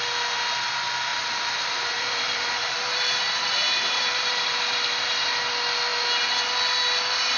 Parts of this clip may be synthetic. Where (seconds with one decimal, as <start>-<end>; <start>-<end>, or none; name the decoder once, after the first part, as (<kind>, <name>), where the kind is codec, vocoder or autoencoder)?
1.1-5.5 (vocoder, BigVGAN v2)